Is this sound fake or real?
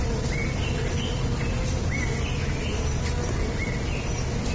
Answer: real